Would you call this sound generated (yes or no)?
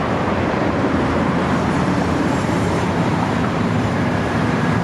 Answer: yes